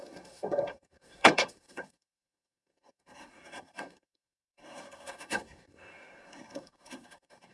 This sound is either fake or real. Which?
fake